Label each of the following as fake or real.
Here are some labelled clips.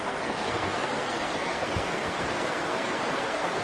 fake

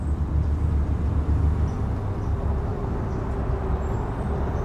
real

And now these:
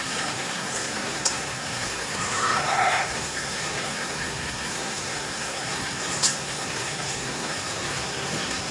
fake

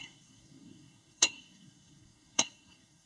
fake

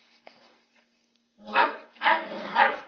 fake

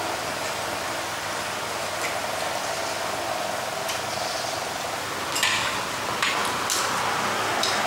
real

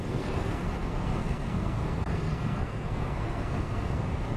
fake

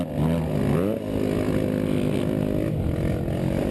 real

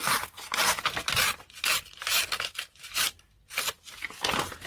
real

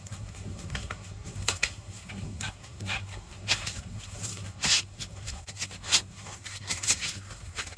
fake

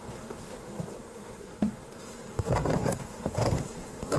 fake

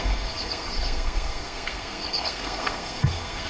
fake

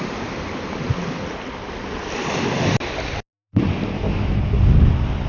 real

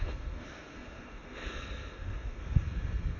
fake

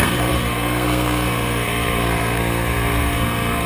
fake